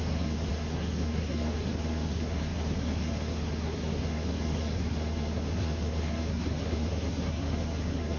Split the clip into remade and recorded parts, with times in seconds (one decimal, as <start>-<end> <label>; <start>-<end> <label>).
0.0-8.2 remade